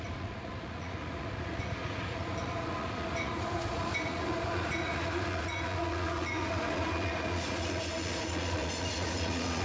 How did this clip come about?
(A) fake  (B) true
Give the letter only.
A